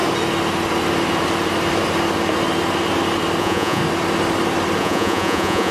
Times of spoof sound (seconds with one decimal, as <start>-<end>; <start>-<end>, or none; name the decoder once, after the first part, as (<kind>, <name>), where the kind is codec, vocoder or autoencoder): 3.4-3.8 (vocoder, Vocos); 4.8-5.7